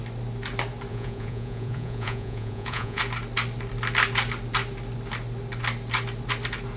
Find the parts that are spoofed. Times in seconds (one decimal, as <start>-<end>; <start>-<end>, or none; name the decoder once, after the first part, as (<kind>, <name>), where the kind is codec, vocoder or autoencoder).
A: 0.9-3.0 (vocoder, Vocos)